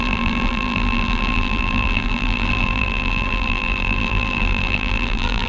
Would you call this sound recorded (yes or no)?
no